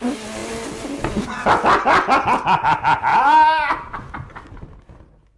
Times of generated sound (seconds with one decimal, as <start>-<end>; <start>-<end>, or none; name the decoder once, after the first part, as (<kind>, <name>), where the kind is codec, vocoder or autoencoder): 3.1-4.5 (vocoder, BigVGAN v2)